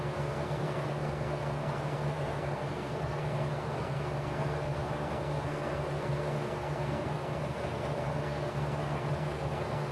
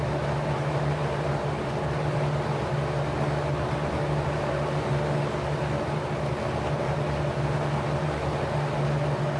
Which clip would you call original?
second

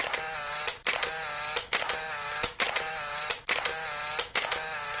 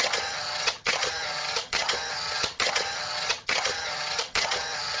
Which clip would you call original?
first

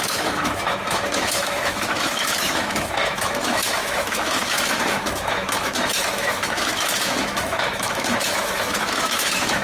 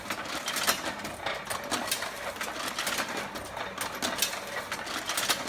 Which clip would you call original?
second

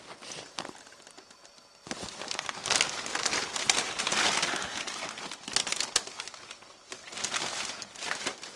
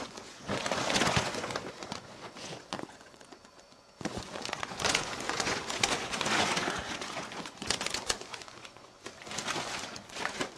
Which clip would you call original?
first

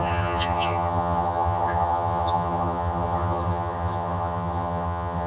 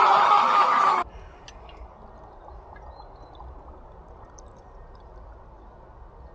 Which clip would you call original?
second